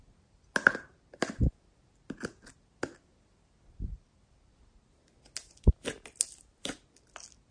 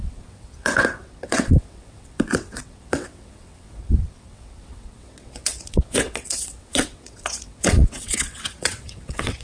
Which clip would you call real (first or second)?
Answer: first